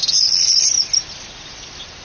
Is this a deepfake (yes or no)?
no